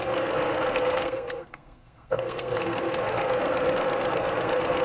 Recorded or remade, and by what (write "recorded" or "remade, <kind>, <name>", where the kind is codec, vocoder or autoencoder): remade, codec, SNAC